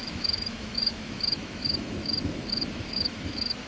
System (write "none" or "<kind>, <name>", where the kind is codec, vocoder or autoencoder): autoencoder, DAC-VAE